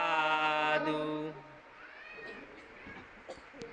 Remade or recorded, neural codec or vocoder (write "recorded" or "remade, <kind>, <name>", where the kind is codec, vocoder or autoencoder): recorded